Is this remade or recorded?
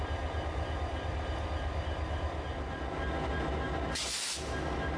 recorded